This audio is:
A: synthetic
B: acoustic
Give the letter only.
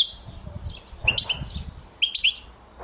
B